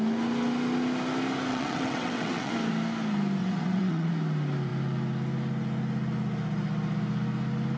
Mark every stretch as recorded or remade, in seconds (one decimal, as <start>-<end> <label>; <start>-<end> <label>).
0.0-1.5 recorded; 1.5-2.5 remade; 2.5-3.4 recorded; 3.4-4.1 remade; 4.1-7.8 recorded